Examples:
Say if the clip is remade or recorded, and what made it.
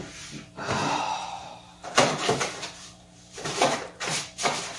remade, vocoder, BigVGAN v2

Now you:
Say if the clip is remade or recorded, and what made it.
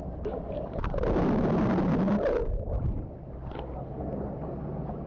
recorded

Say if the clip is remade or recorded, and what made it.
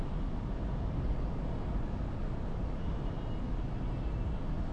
recorded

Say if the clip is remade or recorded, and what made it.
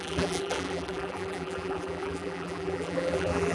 remade, vocoder, BigVGAN v2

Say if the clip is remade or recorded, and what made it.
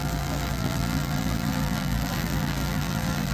remade, vocoder, BigVGAN v2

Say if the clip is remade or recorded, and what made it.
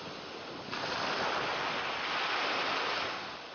recorded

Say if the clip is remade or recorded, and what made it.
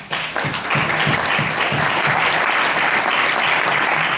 remade, vocoder, BigVGAN v2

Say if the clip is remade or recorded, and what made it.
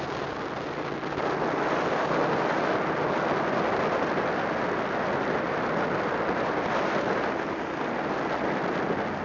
recorded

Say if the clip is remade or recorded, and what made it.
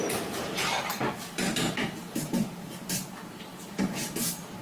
remade, vocoder, BigVGAN v2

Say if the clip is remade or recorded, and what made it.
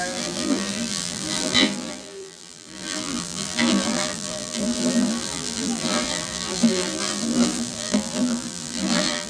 remade, vocoder, BigVGAN v2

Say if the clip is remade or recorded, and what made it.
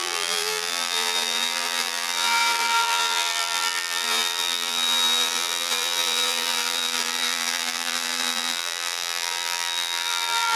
remade, vocoder, BigVGAN v2